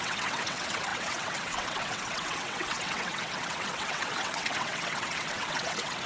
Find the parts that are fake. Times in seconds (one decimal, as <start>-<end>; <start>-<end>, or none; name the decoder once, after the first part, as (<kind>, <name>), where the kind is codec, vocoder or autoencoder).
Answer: 0.0-6.1 (vocoder, WaveNeXt)